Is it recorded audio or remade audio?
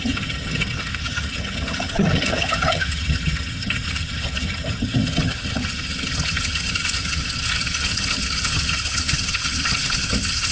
remade